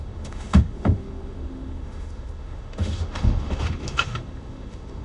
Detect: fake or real fake